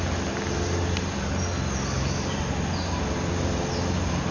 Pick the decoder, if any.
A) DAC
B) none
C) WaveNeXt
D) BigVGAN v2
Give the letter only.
B